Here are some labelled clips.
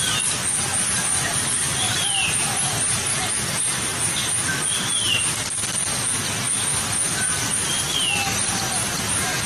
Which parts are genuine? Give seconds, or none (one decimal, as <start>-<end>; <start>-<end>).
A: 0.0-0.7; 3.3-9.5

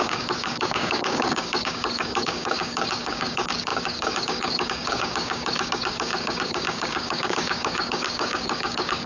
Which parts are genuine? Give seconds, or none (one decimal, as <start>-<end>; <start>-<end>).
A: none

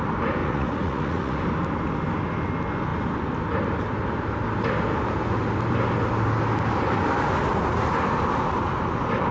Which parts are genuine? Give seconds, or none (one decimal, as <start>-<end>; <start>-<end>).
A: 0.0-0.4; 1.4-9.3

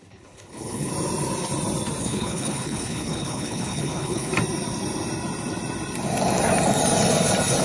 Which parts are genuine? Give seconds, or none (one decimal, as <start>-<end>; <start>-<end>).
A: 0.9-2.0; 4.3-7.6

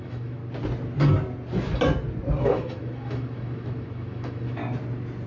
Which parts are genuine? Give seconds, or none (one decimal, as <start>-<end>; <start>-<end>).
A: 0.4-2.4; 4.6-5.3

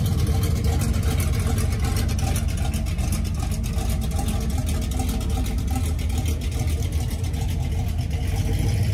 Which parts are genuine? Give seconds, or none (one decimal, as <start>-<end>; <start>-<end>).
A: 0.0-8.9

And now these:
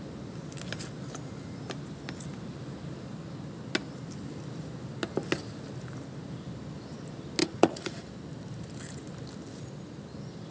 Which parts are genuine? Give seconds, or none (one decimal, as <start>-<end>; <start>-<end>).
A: 0.0-7.4; 8.1-10.5